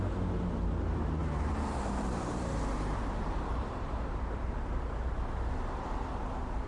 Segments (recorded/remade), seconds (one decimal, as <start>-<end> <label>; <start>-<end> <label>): 0.0-1.2 recorded; 1.2-4.8 remade; 4.8-6.7 recorded